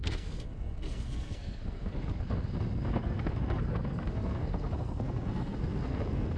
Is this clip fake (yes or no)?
yes